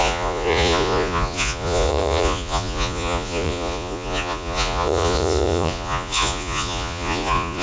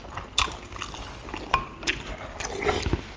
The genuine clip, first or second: second